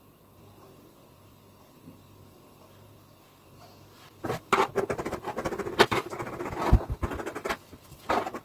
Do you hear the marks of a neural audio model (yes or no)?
yes